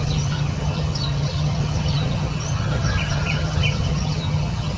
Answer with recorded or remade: remade